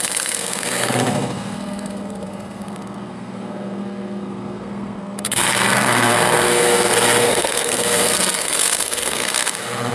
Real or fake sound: fake